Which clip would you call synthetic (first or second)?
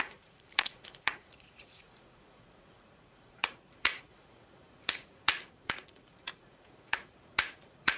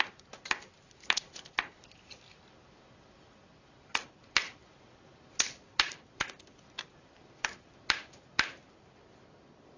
first